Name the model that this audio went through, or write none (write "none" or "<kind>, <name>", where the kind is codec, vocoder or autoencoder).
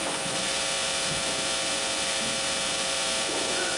vocoder, Vocos